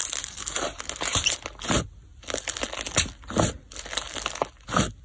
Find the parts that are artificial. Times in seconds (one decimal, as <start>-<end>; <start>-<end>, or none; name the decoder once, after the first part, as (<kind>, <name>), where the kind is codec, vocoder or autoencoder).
none